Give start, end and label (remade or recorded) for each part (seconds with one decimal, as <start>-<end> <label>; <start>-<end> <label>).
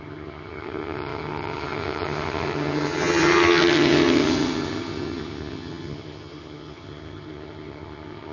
0.0-8.3 remade